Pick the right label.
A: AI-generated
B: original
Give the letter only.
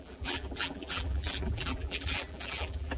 A